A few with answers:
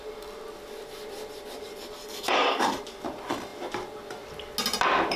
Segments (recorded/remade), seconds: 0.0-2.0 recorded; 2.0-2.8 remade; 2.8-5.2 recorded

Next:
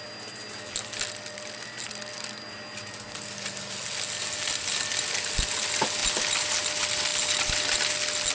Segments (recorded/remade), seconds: 0.0-8.3 recorded

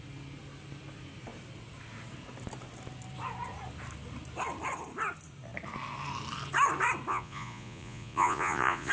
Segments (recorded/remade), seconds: 0.0-7.1 recorded; 7.1-8.9 remade

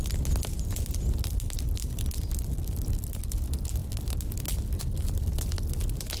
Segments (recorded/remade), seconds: 0.0-6.2 recorded